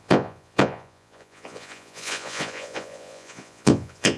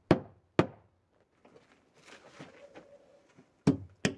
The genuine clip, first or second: second